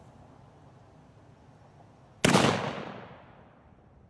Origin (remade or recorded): recorded